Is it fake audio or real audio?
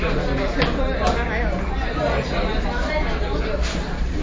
real